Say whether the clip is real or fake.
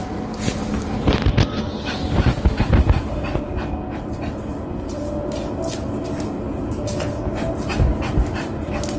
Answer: real